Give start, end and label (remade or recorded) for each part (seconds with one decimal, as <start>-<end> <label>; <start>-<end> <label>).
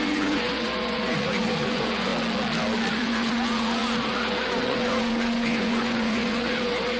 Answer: 0.0-2.1 remade; 2.1-2.9 recorded; 2.9-7.0 remade